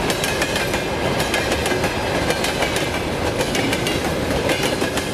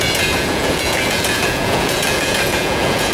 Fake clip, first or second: second